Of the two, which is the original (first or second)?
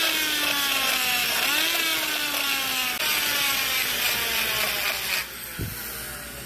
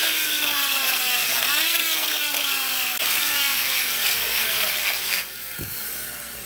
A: first